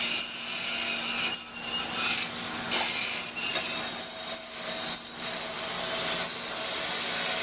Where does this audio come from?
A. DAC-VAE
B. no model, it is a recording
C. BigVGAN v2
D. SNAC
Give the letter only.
B